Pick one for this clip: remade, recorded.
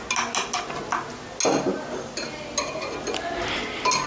recorded